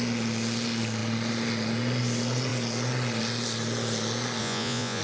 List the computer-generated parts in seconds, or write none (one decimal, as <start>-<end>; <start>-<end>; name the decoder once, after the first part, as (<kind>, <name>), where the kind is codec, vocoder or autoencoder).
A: 4.4-5.0 (vocoder, Vocos)